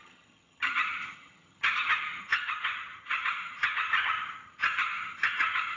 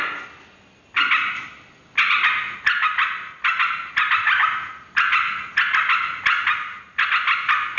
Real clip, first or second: second